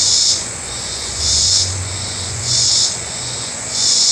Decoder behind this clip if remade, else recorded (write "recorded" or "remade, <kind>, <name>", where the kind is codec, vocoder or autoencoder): remade, vocoder, Vocos